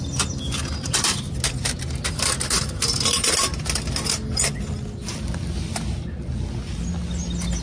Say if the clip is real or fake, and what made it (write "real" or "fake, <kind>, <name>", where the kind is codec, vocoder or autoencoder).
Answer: real